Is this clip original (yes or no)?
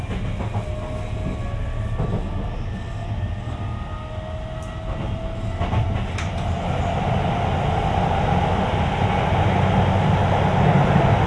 yes